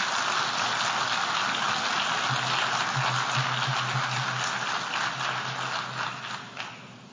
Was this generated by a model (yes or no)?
no